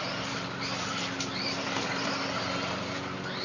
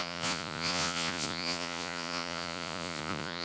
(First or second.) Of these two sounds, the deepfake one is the second